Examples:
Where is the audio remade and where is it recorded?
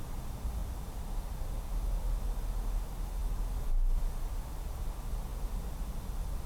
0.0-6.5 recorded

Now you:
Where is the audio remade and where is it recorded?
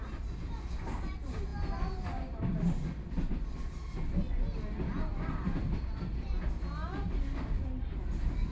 0.0-8.5 recorded